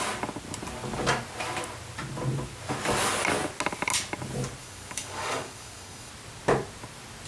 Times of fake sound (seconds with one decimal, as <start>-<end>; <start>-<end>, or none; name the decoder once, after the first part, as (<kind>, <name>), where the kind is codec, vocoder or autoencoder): 4.6-6.1 (codec, DAC)